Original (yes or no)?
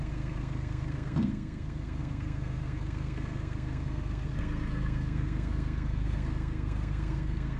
no